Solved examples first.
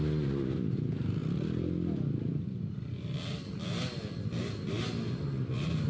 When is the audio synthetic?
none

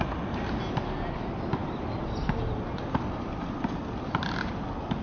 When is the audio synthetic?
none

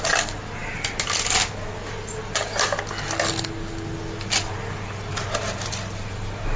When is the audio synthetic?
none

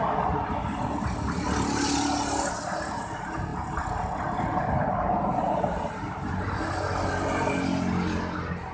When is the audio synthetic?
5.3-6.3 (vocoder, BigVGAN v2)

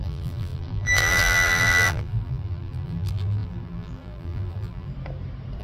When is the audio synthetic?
0.0-4.9 (vocoder, BigVGAN v2)

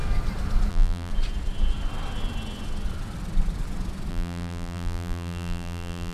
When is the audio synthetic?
0.7-1.1 (vocoder, BigVGAN v2); 4.1-6.1